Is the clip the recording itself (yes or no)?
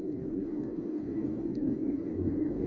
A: no